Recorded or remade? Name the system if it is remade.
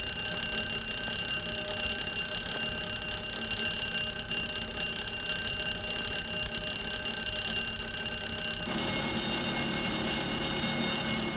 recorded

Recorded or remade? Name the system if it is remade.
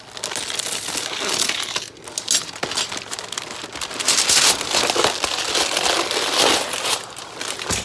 recorded